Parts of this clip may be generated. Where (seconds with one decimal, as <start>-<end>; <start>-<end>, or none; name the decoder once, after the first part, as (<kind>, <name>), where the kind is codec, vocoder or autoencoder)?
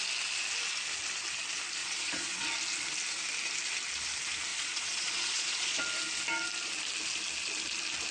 1.8-2.4 (vocoder, Vocos); 4.5-5.8